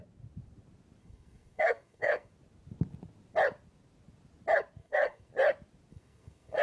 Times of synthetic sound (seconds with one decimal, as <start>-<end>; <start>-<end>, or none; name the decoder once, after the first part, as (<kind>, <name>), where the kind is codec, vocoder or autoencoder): 1.0-2.3 (codec, SNAC); 4.8-5.3; 5.9-6.6